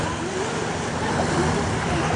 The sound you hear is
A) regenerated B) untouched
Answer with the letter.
B